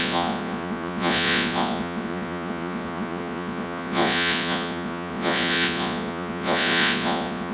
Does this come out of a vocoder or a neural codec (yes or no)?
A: yes